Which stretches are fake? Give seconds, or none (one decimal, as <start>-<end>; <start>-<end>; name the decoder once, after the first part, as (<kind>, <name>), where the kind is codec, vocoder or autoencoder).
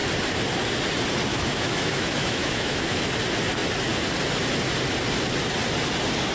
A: 1.3-3.1 (autoencoder, DAC-VAE)